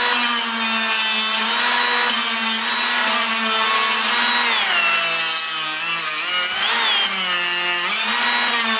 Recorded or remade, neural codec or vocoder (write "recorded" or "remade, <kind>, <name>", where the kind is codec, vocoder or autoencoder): recorded